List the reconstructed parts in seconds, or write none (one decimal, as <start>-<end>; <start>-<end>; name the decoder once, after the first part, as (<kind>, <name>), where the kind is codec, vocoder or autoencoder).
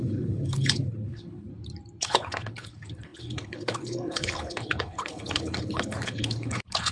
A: 0.0-1.5 (codec, HILCodec); 2.0-6.9